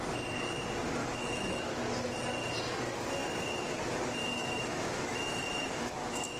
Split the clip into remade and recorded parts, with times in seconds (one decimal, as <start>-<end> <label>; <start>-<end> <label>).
0.0-1.0 recorded; 1.0-1.8 remade; 1.8-4.2 recorded; 4.2-6.4 remade